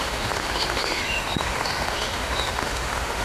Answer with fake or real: fake